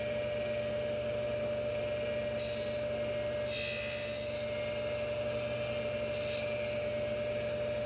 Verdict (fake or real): real